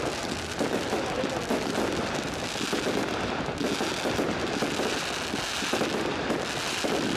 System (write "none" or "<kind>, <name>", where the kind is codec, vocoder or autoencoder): none